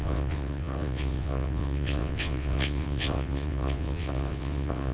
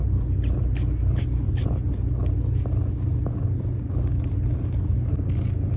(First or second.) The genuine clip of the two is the second